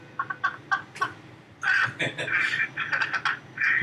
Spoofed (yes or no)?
no